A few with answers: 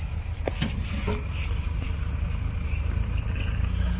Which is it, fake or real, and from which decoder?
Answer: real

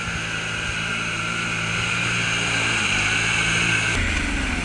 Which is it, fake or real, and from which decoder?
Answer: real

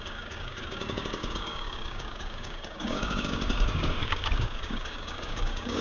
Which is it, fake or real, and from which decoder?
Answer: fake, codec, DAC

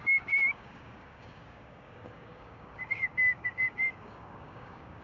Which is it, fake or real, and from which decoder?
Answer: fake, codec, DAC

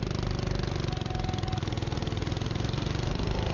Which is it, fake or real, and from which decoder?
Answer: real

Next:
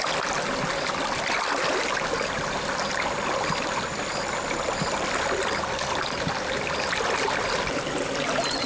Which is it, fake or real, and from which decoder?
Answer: real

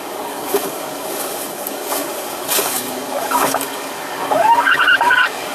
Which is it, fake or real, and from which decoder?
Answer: fake, codec, DAC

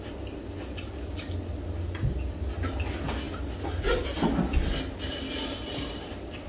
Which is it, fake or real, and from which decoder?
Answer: real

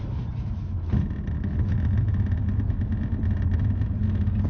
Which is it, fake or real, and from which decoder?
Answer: real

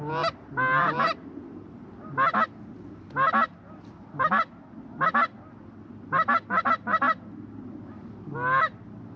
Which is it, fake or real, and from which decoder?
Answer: real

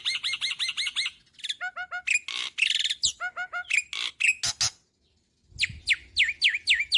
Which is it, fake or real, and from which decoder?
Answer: real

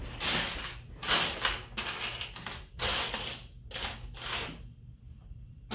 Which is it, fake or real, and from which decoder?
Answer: real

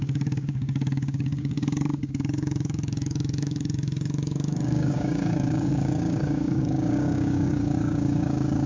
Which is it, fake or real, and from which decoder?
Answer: fake, codec, DAC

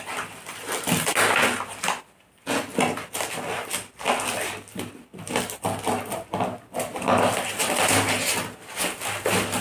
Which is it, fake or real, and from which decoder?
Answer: real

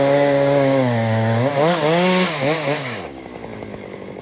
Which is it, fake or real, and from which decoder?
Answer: fake, codec, DAC